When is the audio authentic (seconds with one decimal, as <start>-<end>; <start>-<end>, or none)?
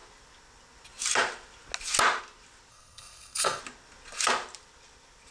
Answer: 0.0-2.7; 3.6-5.3